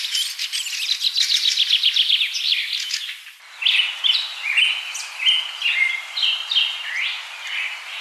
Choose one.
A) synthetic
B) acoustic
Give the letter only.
B